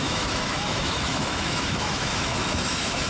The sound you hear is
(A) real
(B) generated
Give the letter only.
B